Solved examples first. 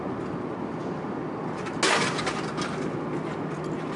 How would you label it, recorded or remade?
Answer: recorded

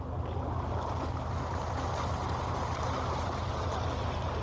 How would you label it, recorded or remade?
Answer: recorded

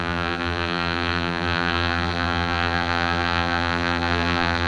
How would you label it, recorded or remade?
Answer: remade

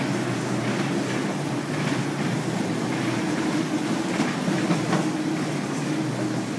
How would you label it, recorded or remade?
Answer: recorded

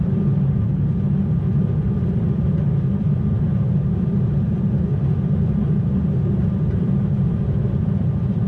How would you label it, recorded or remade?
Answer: remade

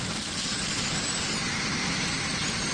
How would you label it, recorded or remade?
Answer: recorded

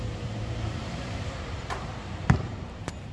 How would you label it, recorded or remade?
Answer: remade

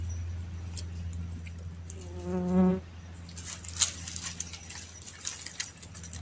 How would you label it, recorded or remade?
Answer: recorded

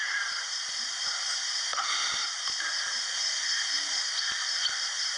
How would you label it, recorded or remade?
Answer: recorded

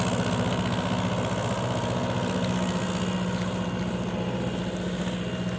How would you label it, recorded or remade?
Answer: recorded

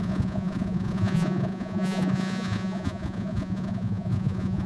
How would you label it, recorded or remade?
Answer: remade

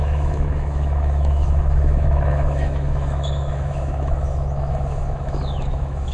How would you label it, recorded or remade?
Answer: remade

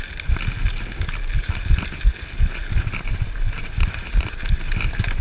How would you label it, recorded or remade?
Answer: recorded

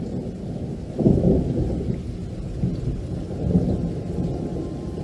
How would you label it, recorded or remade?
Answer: recorded